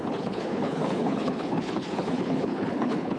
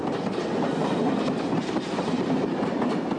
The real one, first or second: second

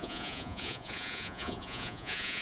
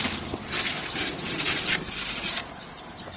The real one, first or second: second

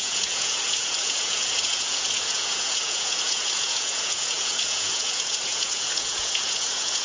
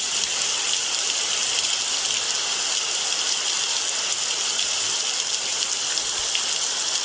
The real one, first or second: second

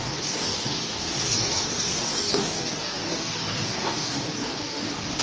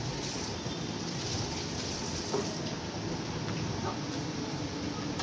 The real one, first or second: second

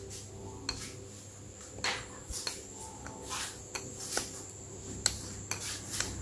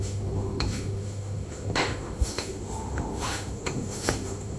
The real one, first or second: first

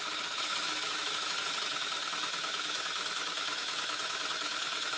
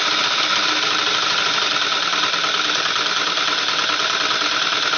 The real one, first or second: second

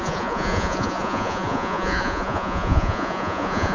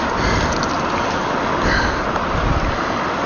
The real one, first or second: second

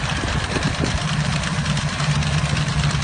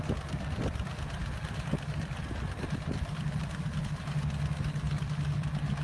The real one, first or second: second